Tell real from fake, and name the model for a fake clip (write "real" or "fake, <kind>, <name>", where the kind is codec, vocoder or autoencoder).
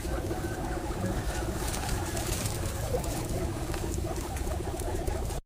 fake, codec, DAC